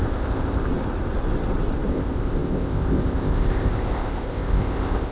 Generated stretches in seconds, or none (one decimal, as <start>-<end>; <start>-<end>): 0.0-0.7; 1.9-5.1